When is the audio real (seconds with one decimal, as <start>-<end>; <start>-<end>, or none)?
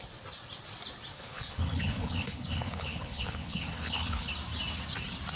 0.0-1.1; 4.3-5.4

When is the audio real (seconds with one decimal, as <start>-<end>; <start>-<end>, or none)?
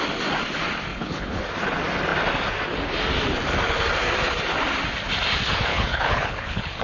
0.0-0.9; 1.4-5.7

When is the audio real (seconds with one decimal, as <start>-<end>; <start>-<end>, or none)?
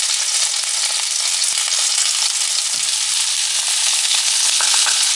0.0-3.8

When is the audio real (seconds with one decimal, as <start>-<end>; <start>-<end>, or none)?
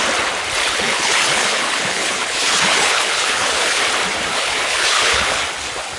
0.0-0.6; 3.8-4.3; 5.4-6.0